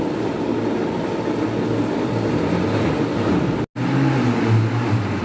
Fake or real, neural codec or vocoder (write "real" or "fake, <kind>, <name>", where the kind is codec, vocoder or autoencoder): real